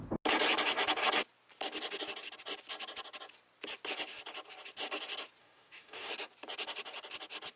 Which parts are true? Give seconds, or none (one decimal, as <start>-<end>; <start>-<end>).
0.0-5.4; 6.1-7.6